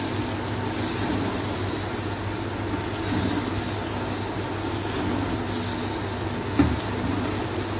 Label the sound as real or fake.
real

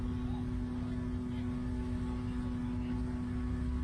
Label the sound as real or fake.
real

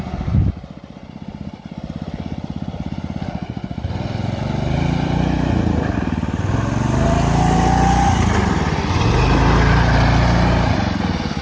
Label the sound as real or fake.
real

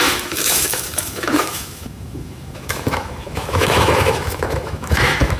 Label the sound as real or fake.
fake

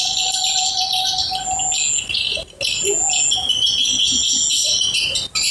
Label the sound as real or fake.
real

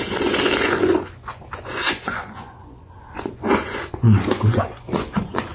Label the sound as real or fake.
fake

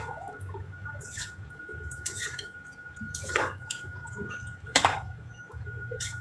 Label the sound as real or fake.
fake